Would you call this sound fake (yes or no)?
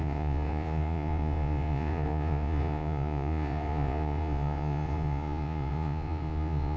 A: yes